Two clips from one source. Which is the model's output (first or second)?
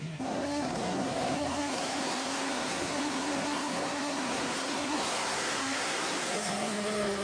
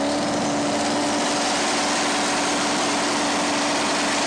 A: first